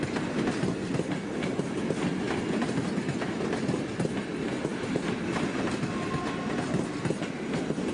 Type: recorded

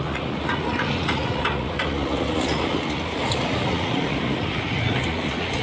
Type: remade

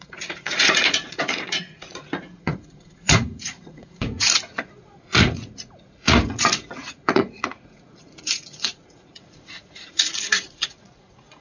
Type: remade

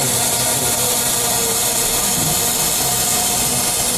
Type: recorded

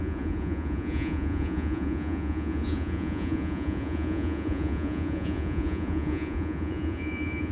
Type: remade